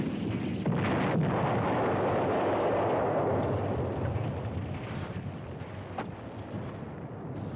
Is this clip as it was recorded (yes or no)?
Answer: yes